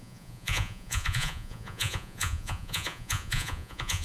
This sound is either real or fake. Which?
fake